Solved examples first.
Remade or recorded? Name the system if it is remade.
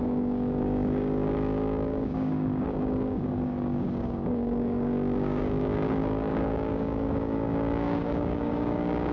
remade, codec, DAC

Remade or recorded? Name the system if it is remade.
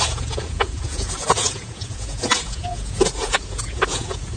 remade, vocoder, Vocos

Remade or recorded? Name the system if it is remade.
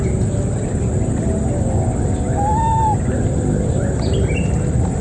recorded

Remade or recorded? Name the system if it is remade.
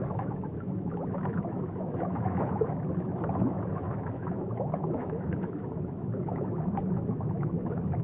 remade, autoencoder, DAC-VAE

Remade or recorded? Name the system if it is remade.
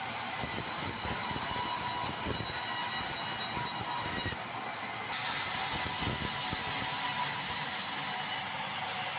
recorded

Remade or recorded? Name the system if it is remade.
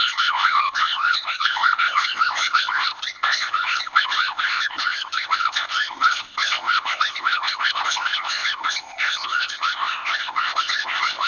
remade, codec, ZipCodec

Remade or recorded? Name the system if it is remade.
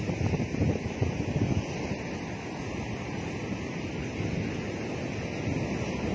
recorded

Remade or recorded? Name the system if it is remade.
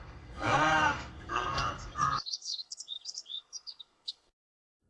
remade, codec, SNAC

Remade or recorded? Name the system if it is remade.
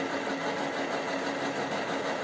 recorded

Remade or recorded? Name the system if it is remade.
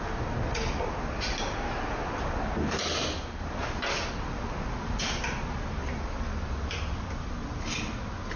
recorded